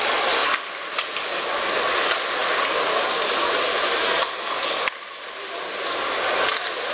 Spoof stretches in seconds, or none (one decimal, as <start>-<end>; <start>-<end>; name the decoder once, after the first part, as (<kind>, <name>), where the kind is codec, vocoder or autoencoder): none